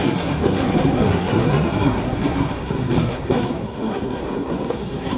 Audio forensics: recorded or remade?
remade